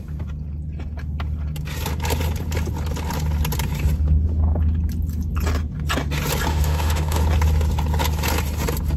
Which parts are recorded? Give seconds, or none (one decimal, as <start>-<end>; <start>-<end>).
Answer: 0.0-6.5; 7.2-9.0